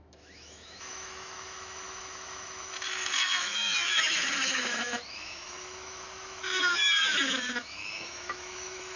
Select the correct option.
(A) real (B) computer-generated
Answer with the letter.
B